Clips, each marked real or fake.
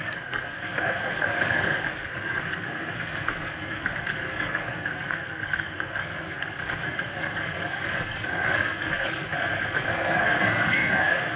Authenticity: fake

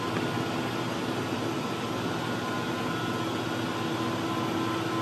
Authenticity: real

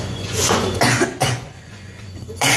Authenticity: fake